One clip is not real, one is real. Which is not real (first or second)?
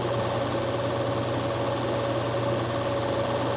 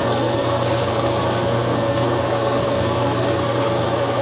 second